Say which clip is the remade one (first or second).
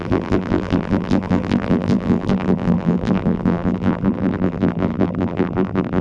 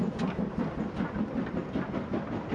first